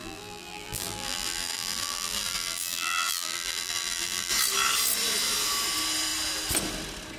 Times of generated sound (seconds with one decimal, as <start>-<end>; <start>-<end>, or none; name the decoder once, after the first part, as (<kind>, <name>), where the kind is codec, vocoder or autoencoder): 0.0-4.3 (vocoder, BigVGAN v2)